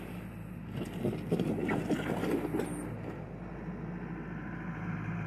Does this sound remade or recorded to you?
recorded